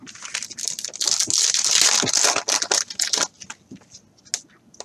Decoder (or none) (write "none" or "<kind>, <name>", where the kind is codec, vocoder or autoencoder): none